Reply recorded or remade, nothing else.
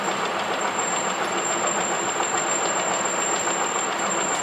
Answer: recorded